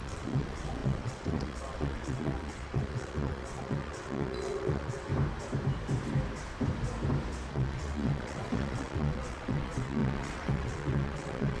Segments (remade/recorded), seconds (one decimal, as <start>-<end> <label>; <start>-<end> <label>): 0.0-5.1 remade; 5.1-7.5 recorded; 7.5-11.6 remade